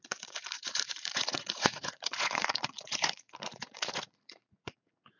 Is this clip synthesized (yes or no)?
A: yes